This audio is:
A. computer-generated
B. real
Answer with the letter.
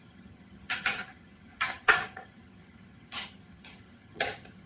A